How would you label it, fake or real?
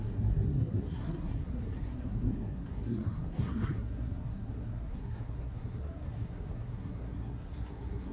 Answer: fake